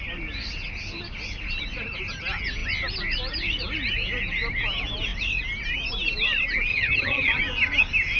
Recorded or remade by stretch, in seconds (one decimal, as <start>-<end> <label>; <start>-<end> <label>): 0.0-6.7 recorded; 6.7-7.4 remade; 7.4-8.2 recorded